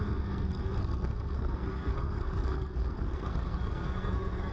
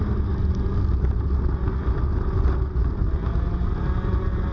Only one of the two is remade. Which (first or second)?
first